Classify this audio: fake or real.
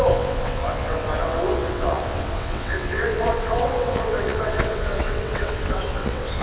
fake